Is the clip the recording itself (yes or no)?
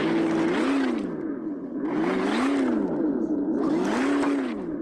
yes